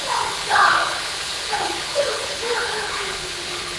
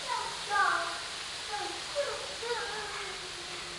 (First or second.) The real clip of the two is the second